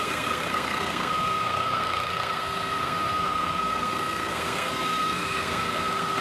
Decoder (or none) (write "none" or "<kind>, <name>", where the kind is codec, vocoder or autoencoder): codec, SNAC